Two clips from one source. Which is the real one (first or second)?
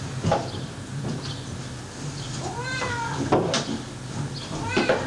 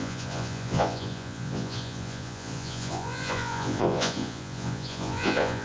first